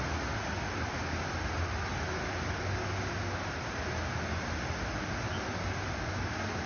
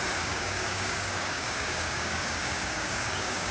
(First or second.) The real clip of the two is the first